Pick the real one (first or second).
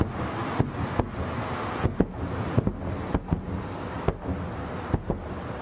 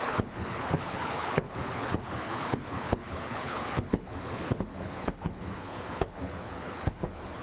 first